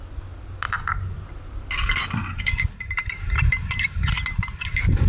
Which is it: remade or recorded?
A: recorded